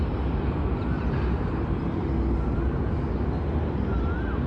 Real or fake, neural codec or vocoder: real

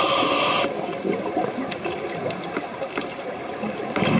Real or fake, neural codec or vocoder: real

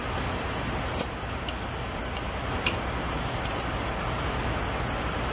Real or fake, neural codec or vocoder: real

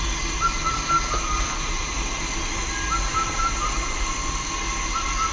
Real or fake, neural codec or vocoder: real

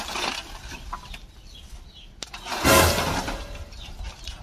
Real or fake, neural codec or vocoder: real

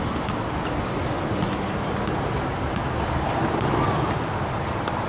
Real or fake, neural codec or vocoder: real